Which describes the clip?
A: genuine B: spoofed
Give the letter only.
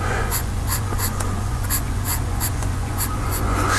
B